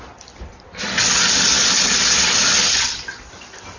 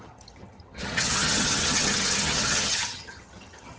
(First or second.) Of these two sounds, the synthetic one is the second